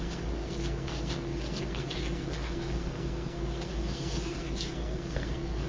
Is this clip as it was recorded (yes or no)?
no